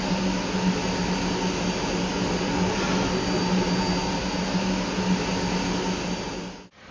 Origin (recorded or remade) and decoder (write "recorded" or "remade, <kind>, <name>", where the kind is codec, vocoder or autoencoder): recorded